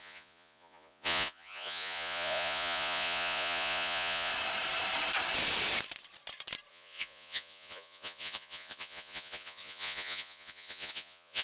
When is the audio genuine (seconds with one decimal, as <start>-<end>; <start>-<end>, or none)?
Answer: 4.3-6.7